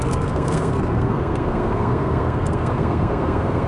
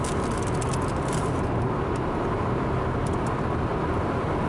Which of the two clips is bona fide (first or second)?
second